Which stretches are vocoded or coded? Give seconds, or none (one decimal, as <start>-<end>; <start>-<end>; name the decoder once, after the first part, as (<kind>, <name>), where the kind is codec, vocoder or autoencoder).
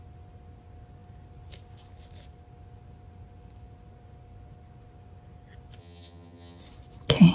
5.8-6.6 (vocoder, HiFi-GAN)